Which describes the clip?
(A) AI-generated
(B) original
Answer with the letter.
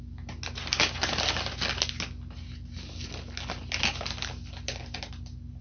B